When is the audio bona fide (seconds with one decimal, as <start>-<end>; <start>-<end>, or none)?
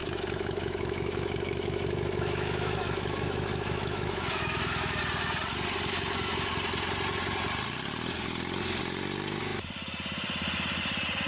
5.0-11.3